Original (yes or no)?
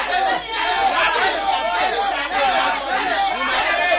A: yes